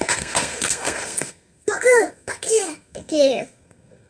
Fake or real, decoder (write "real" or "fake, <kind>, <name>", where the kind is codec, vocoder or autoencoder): fake, codec, SNAC